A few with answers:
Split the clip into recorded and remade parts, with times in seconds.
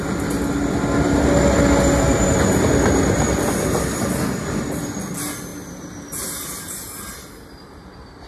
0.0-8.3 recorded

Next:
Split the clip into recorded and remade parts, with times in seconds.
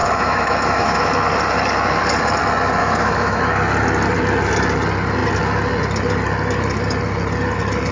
0.0-1.1 remade; 1.1-2.8 recorded; 2.8-3.4 remade; 3.4-7.9 recorded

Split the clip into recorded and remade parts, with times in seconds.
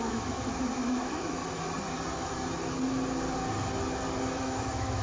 0.0-1.4 remade; 1.4-4.4 recorded; 4.4-5.0 remade